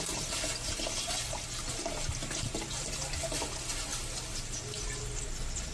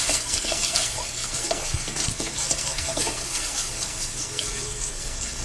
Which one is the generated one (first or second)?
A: second